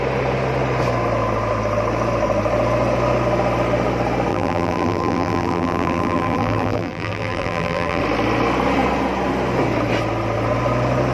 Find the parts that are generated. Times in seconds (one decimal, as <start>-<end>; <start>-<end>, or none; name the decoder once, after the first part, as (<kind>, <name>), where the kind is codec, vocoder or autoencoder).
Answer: 4.3-8.0 (vocoder, BigVGAN v2)